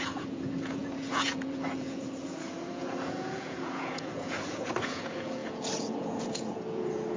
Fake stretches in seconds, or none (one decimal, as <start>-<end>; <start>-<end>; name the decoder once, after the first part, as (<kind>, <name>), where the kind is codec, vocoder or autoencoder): 0.0-7.2 (vocoder, Vocos)

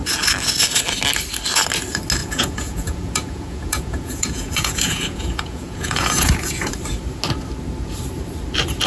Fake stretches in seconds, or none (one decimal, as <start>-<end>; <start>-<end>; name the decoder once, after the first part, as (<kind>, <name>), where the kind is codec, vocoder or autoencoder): 2.2-6.7 (vocoder, Vocos)

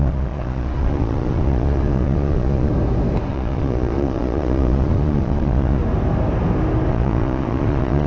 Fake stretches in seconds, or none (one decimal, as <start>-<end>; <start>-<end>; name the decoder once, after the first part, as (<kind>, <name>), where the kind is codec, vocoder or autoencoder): 0.0-2.7 (vocoder, Vocos); 3.3-5.8; 6.9-8.1

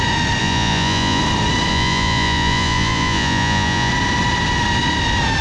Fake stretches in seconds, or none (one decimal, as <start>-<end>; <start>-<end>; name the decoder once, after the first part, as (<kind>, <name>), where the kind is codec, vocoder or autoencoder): 0.4-1.2 (vocoder, Vocos); 1.7-3.9

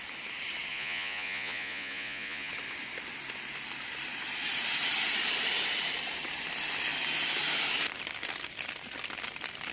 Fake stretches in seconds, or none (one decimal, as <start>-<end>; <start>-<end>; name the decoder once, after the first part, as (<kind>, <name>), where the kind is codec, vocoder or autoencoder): 0.7-2.5 (vocoder, Vocos)